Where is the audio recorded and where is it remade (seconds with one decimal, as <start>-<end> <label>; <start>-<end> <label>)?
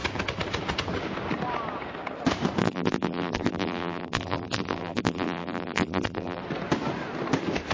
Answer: 0.0-2.6 recorded; 2.6-6.4 remade; 6.4-7.7 recorded